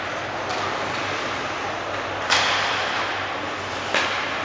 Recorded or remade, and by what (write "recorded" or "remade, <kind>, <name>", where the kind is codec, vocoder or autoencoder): recorded